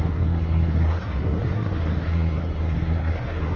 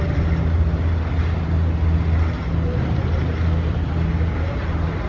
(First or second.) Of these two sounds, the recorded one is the second